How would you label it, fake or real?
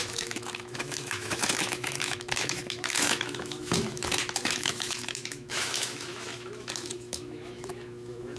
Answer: fake